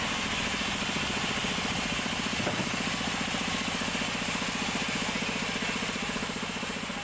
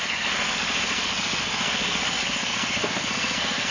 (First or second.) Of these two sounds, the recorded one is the first